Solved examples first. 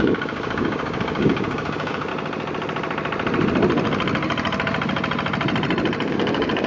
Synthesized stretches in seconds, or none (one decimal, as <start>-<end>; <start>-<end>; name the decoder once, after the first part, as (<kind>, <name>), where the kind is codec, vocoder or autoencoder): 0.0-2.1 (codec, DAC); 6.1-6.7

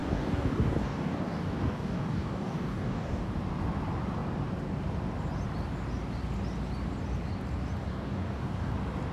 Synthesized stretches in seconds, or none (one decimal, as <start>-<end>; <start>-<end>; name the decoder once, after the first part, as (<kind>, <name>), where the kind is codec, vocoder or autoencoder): 0.0-3.3 (codec, DAC); 7.9-8.7

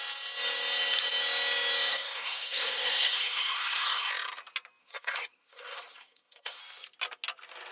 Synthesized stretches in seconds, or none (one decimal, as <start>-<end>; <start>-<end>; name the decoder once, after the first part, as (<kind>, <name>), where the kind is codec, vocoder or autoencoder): 1.9-4.1 (codec, SNAC); 4.8-6.6

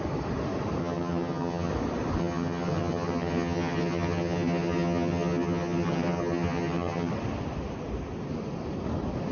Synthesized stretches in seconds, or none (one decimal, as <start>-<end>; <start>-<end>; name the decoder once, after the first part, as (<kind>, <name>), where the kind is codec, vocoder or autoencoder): 0.8-1.7 (vocoder, HiFi-GAN); 2.2-7.1